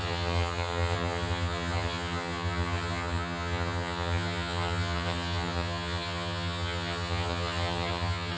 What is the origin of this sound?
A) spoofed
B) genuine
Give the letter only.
A